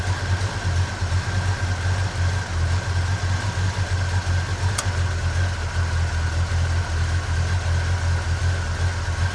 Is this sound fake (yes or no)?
no